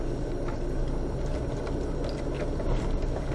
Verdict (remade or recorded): recorded